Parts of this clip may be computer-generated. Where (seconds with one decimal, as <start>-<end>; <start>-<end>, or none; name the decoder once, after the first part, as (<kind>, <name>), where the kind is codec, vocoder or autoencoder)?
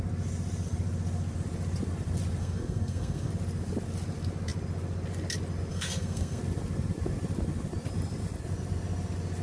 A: 2.4-3.3 (codec, SNAC); 5.7-6.4